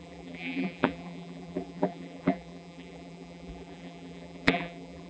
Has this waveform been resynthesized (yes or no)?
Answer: yes